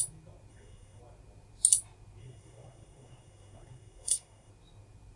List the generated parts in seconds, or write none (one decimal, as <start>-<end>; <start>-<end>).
0.5-1.0; 2.2-4.5